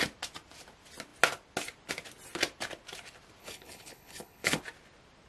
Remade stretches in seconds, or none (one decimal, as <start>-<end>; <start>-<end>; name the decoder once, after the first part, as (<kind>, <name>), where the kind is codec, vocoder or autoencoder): 3.4-4.6 (codec, HILCodec)